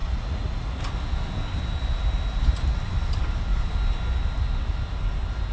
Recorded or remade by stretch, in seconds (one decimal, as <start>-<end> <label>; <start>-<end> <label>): 0.0-0.8 remade; 0.8-5.5 recorded